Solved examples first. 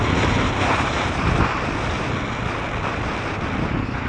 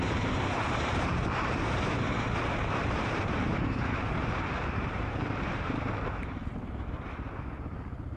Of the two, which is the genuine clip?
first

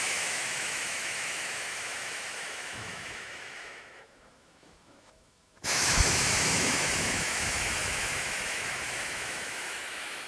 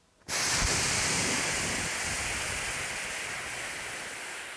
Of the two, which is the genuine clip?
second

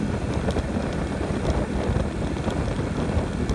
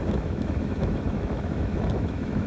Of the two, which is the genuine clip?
first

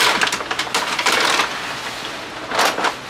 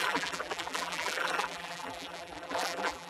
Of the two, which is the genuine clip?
first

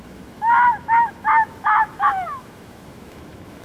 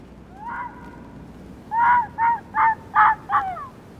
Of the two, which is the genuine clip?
second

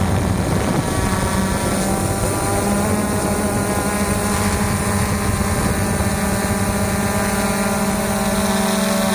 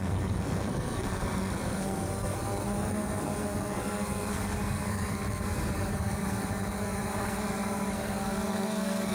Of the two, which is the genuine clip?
first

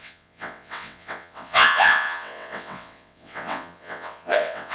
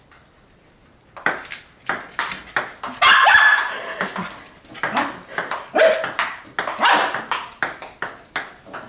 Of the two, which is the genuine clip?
second